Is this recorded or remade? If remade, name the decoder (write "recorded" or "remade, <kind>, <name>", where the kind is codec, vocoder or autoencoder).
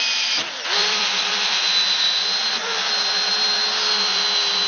remade, vocoder, BigVGAN v2